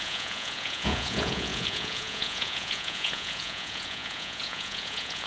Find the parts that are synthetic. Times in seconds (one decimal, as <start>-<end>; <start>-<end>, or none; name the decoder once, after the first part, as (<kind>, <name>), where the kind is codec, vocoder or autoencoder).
0.0-5.3 (vocoder, Vocos)